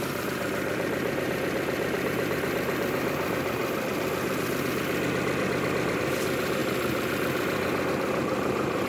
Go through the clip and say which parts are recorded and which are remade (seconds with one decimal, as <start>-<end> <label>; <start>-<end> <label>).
0.0-3.6 remade; 3.6-5.9 recorded; 5.9-6.6 remade; 6.6-7.9 recorded; 7.9-8.9 remade